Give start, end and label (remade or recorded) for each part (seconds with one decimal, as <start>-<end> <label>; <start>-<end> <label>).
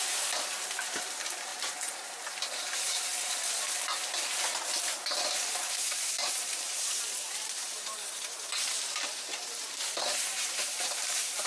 0.0-3.1 remade; 3.1-5.8 recorded; 5.8-11.5 remade